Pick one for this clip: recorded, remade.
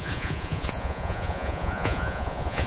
remade